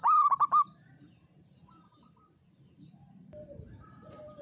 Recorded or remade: remade